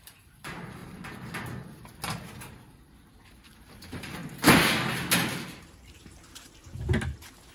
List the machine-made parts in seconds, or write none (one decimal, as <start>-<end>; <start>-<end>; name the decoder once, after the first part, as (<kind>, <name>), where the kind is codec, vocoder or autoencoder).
0.0-0.8 (vocoder, BigVGAN v2); 3.4-4.2; 5.5-6.6